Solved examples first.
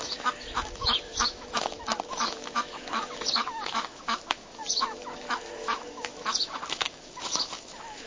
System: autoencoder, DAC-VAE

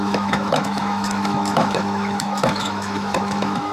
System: autoencoder, DAC-VAE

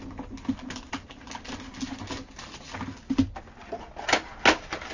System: none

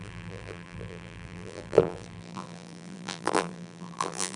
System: vocoder, BigVGAN v2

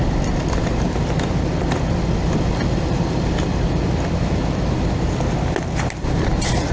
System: none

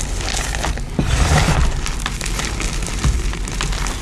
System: none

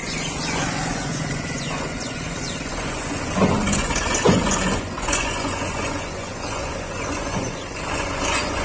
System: vocoder, Vocos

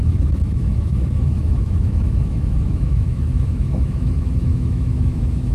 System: autoencoder, DAC-VAE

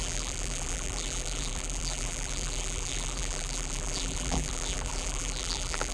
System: vocoder, BigVGAN v2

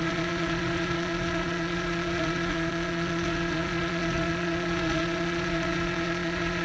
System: vocoder, Vocos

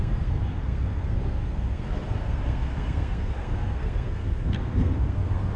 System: codec, SNAC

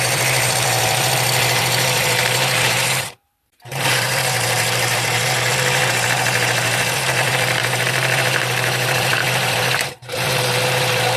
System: vocoder, BigVGAN v2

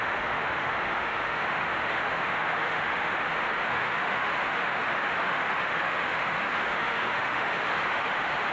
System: autoencoder, DAC-VAE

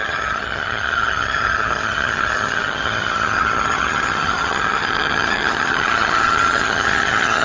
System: vocoder, HiFi-GAN